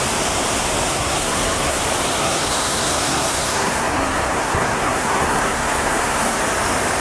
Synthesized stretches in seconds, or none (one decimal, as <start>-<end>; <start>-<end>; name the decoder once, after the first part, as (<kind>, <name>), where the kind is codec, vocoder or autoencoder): 0.9-1.8 (codec, SNAC); 2.2-6.4